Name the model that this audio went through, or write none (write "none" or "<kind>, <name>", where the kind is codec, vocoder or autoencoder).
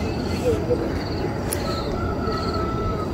none